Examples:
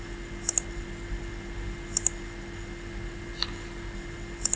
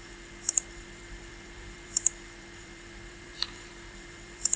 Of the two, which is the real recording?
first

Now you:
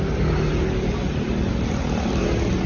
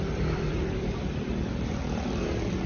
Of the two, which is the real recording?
first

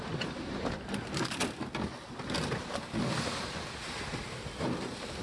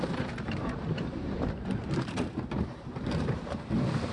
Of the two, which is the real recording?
first